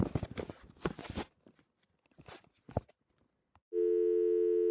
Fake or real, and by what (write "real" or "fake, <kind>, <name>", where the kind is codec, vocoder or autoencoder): real